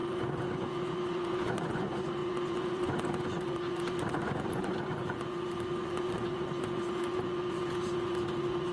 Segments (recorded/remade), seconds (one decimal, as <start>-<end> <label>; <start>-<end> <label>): 0.0-8.7 remade